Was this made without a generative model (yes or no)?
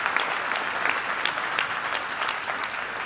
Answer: yes